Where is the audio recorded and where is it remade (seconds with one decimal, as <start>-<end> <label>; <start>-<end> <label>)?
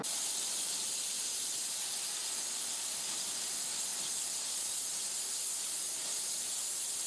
0.0-2.2 remade; 2.2-2.8 recorded; 2.8-7.1 remade